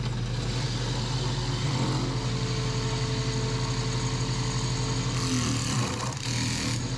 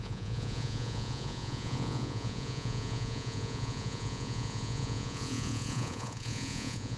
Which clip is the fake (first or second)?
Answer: second